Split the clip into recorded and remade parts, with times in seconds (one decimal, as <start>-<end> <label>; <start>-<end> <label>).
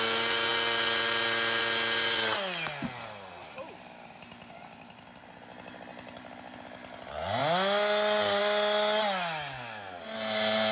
0.0-3.4 recorded; 3.4-4.3 remade; 4.3-10.7 recorded